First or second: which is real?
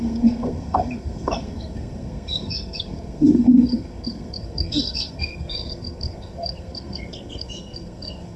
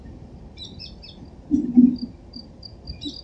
second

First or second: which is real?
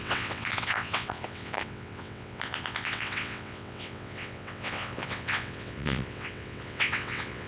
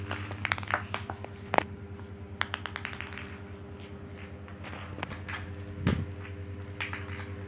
second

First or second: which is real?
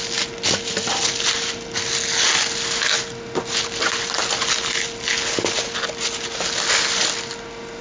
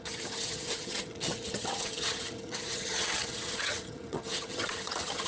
first